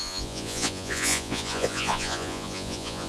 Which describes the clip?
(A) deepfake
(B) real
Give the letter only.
A